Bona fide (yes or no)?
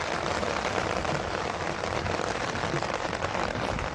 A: yes